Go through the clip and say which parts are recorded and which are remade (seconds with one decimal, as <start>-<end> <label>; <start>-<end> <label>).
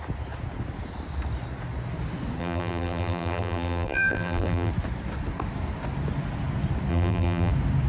0.0-2.4 recorded; 2.4-4.7 remade; 4.7-6.9 recorded; 6.9-7.5 remade; 7.5-7.9 recorded